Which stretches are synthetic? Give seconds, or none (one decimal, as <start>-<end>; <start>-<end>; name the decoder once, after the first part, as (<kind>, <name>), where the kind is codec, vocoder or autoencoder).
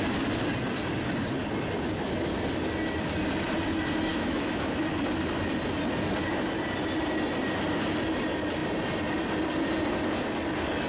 4.1-4.8 (autoencoder, DAC-VAE)